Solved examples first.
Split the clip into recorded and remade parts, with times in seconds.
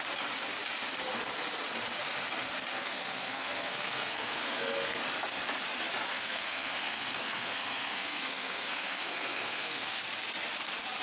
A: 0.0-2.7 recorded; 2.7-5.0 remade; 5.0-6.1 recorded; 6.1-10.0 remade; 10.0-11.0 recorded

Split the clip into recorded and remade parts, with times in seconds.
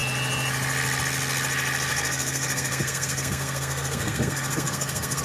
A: 0.0-1.9 recorded; 1.9-5.2 remade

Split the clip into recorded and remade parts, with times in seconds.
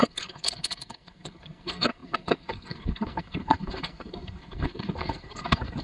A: 0.0-5.8 remade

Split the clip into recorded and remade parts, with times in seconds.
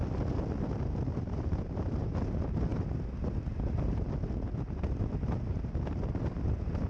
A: 0.0-6.9 recorded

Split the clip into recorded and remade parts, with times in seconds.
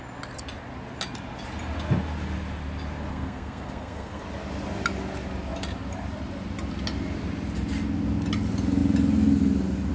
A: 0.0-3.1 recorded; 3.1-4.2 remade; 4.2-9.9 recorded